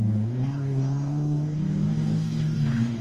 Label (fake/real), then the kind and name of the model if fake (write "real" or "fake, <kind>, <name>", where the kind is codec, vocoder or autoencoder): fake, codec, DAC